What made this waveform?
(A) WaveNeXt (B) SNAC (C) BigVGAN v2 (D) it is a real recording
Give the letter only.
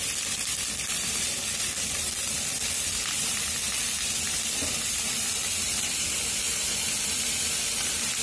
C